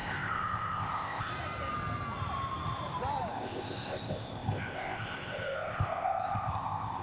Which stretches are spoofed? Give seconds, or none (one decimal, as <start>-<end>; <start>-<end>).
0.0-1.3; 3.3-7.0

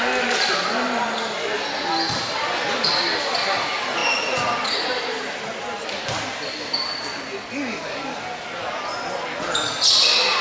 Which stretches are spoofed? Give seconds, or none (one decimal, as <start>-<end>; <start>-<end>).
none

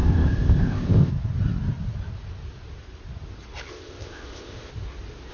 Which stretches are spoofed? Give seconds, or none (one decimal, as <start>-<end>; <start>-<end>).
0.0-1.1; 3.7-4.7